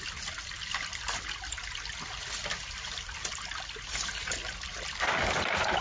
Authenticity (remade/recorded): recorded